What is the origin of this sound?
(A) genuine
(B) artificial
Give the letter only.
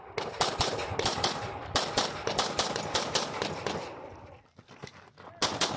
A